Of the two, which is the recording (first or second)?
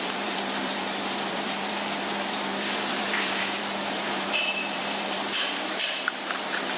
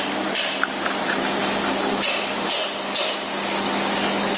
second